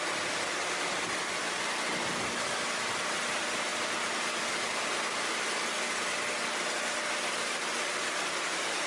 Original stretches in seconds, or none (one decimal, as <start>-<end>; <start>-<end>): 0.0-8.9

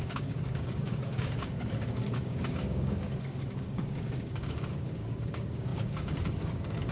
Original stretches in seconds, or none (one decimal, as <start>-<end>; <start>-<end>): none

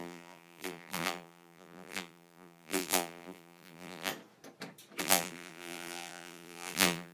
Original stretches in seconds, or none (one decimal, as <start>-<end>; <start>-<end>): 4.1-5.0

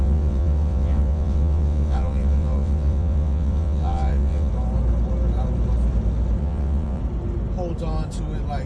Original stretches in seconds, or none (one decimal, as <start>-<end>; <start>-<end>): 4.5-6.4; 7.0-8.7